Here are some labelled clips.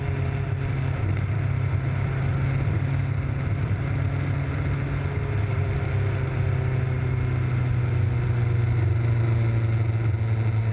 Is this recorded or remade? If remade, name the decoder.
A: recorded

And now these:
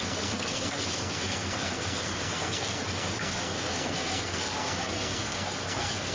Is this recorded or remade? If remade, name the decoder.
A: remade, codec, SNAC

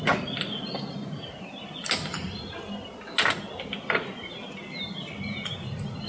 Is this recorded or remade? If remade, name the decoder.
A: recorded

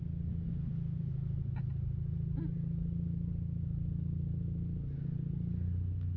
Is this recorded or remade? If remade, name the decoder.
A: recorded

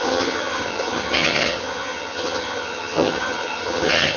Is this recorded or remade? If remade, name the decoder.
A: remade, vocoder, HiFi-GAN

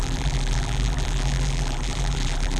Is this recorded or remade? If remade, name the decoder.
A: remade, vocoder, BigVGAN v2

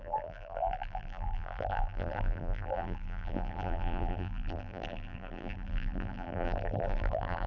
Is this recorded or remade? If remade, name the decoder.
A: remade, vocoder, BigVGAN v2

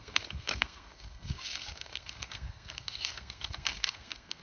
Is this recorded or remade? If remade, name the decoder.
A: remade, codec, SNAC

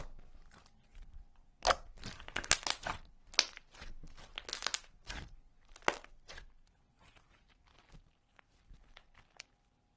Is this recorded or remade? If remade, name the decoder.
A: recorded